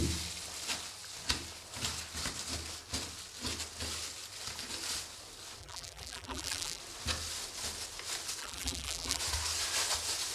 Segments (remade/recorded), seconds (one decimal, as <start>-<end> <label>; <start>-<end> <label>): 0.0-5.6 recorded; 5.6-6.8 remade; 6.8-8.4 recorded; 8.4-9.2 remade; 9.2-10.3 recorded